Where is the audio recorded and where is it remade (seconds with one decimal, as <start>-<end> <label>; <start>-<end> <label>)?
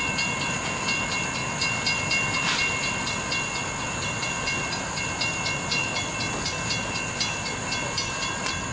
0.0-8.7 recorded